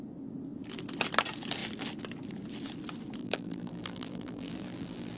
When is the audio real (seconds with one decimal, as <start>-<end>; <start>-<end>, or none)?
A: 0.0-3.2